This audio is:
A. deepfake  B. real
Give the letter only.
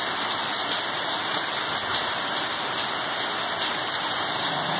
B